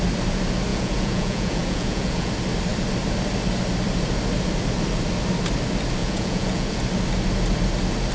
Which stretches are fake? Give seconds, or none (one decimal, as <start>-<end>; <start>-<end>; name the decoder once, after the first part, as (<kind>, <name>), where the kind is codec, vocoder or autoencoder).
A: 0.7-2.3 (vocoder, Vocos); 6.0-6.8